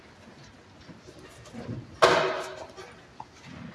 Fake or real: real